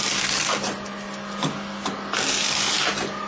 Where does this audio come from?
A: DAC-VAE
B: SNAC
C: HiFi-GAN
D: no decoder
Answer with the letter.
D